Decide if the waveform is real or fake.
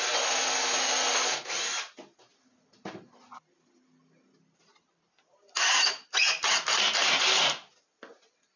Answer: real